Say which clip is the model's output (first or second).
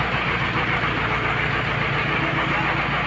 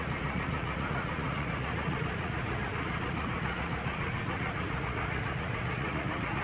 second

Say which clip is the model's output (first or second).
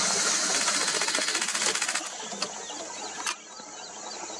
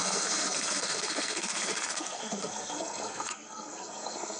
second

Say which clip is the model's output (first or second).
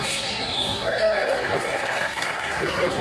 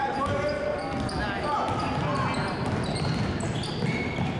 first